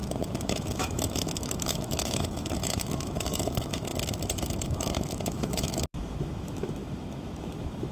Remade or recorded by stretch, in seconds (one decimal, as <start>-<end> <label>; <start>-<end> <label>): 0.0-3.9 remade; 3.9-4.4 recorded; 4.4-7.9 remade